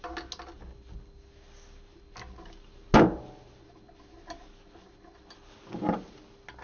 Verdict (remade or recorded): recorded